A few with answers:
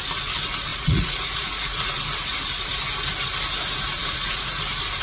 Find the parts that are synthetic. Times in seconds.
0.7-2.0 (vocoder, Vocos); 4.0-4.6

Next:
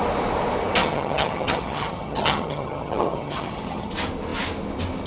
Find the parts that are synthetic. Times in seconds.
0.8-3.9 (vocoder, HiFi-GAN)

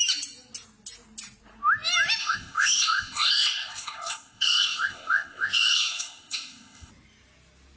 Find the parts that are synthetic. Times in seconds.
2.2-6.9 (codec, ZipCodec)

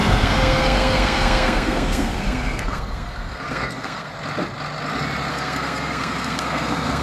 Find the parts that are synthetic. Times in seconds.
0.0-4.1 (codec, SNAC); 5.3-7.0

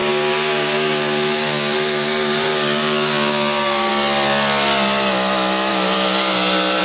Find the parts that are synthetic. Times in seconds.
0.0-3.9 (codec, DAC); 5.7-6.8

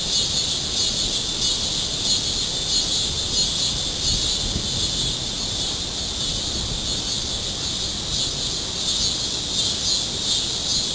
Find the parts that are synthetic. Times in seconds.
none

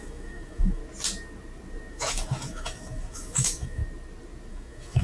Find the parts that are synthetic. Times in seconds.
0.0-0.8 (autoencoder, DAC-VAE); 1.9-3.8; 4.5-5.0

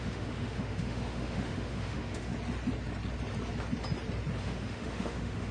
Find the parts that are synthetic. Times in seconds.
0.0-2.3 (autoencoder, DAC-VAE); 4.4-5.5